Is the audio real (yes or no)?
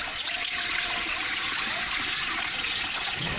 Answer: no